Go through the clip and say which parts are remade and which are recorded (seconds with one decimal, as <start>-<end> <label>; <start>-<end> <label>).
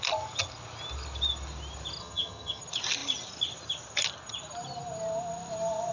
0.0-2.0 recorded; 2.0-2.6 remade; 2.6-5.9 recorded